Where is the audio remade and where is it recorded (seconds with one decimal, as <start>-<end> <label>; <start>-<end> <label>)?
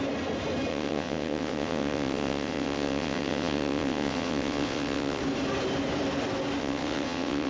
0.0-0.7 recorded; 0.7-5.2 remade; 5.2-6.6 recorded; 6.6-7.5 remade